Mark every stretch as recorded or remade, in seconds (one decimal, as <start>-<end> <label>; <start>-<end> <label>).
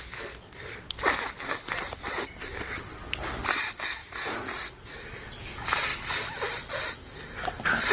0.0-4.0 recorded; 4.0-5.0 remade; 5.0-7.9 recorded